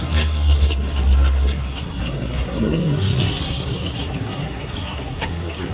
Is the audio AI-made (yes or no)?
yes